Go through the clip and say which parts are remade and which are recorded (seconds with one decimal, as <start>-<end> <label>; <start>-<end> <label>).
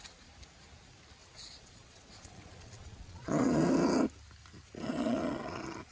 0.0-1.2 recorded; 1.2-3.6 remade; 3.6-4.6 recorded; 4.6-5.9 remade